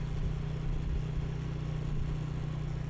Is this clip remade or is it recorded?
recorded